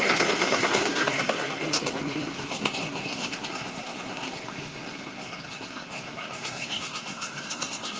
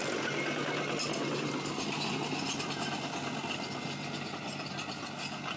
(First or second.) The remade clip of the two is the first